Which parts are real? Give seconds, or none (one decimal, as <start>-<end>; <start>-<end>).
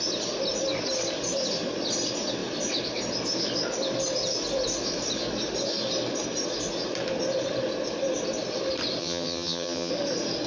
0.0-9.0; 9.9-10.5